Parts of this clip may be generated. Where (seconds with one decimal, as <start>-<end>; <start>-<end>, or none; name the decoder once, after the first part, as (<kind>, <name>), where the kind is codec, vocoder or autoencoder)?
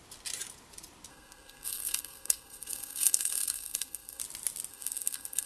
1.1-4.2 (codec, SNAC); 4.7-5.5